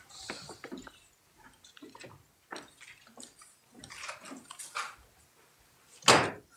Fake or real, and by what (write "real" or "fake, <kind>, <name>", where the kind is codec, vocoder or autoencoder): real